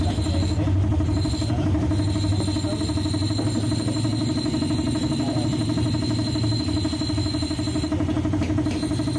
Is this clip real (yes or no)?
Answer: yes